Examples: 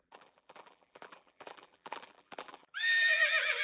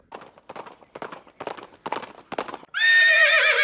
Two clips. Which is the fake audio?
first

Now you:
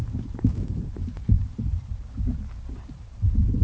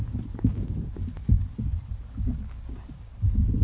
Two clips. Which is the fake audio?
first